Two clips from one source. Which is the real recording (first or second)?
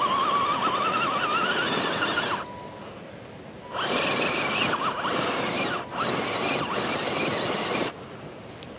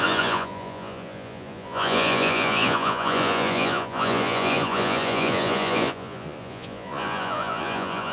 first